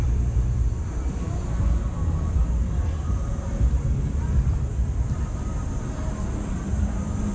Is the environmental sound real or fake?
fake